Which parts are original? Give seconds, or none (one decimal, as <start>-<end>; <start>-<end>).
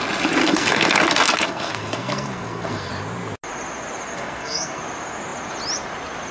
0.0-0.4; 2.9-4.1; 4.8-6.3